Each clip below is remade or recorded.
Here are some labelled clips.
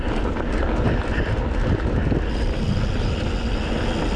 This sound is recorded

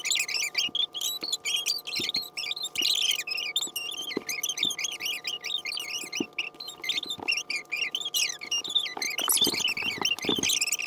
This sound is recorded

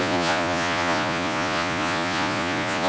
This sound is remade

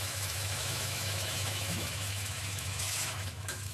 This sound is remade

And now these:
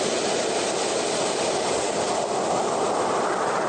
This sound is recorded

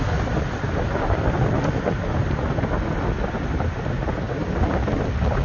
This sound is recorded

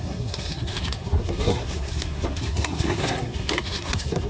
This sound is remade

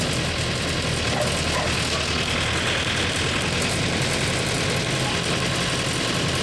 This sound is recorded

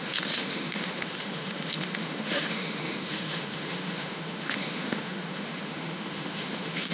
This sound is remade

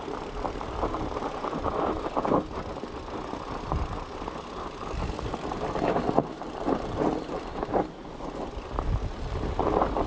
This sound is recorded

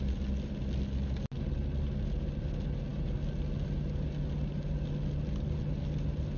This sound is recorded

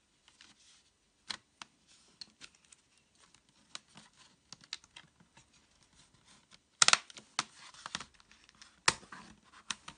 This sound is recorded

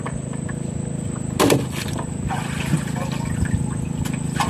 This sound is recorded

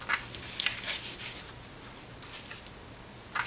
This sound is recorded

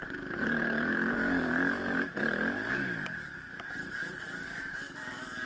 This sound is remade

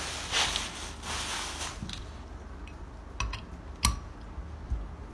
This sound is recorded